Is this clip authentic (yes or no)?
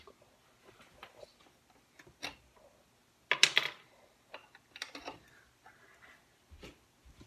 yes